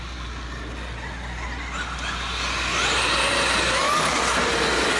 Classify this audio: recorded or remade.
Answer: recorded